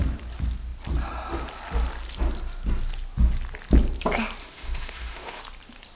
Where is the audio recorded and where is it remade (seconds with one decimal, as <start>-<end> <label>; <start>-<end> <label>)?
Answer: 0.0-4.4 recorded; 4.4-5.4 remade; 5.4-6.0 recorded